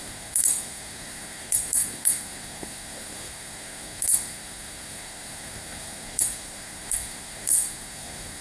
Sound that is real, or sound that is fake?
fake